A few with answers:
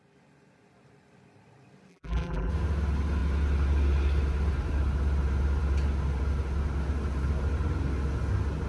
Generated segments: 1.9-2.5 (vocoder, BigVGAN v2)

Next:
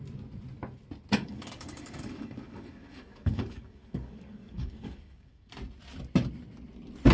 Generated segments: 1.2-5.5 (codec, DAC)

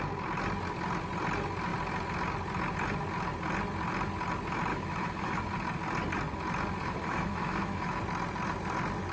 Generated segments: 4.7-5.4 (autoencoder, DAC-VAE); 6.8-8.0